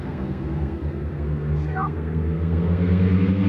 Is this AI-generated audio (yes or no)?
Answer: yes